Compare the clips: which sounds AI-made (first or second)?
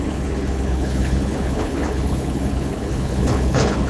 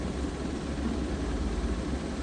first